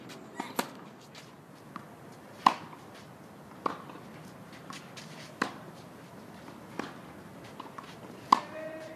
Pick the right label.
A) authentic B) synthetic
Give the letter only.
A